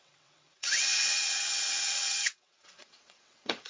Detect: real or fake fake